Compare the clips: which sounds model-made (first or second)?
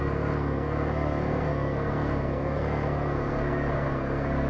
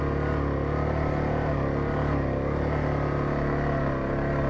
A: first